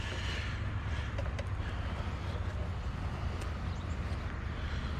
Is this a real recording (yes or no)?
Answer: yes